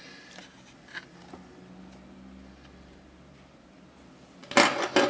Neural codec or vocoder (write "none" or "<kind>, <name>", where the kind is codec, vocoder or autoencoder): none